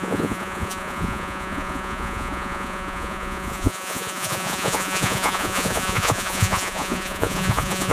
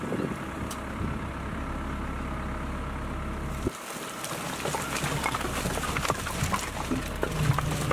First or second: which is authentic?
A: second